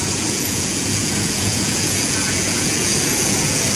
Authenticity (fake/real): fake